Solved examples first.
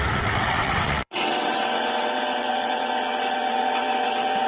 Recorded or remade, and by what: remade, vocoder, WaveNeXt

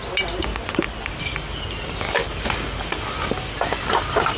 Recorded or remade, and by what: recorded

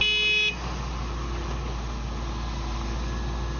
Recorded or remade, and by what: recorded